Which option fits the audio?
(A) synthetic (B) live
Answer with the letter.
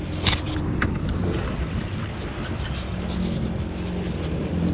B